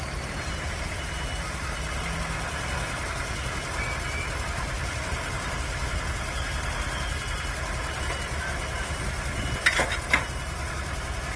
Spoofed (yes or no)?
no